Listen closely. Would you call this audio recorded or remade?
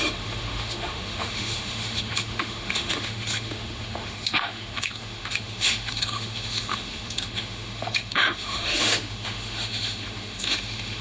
remade